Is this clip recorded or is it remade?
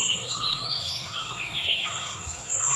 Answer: remade